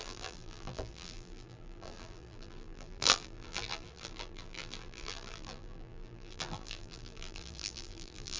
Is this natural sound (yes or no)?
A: no